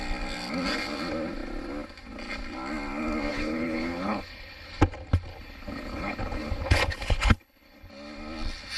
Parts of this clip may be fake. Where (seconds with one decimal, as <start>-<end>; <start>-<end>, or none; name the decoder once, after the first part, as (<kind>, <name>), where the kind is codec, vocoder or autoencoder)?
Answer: 3.3-4.7 (codec, HILCodec); 5.3-7.9